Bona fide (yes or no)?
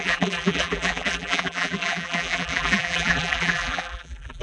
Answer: no